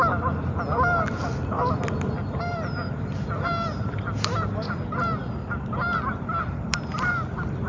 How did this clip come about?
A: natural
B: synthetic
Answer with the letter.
A